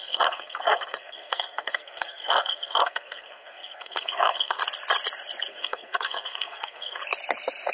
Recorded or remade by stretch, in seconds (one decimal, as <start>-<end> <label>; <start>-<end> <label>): 0.0-4.6 remade; 4.6-5.5 recorded; 5.5-7.0 remade; 7.0-7.7 recorded